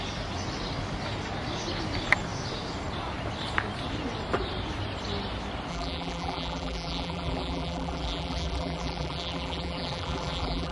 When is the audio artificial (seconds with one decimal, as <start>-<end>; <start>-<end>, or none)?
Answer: 5.7-10.7